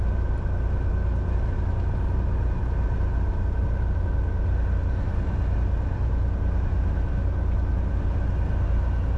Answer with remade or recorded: recorded